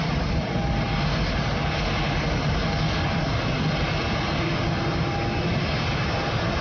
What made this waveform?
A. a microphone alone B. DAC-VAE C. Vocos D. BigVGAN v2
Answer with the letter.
A